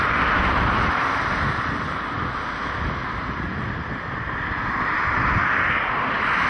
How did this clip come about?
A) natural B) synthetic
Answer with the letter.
A